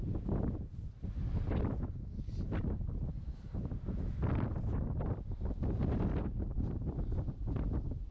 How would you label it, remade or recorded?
recorded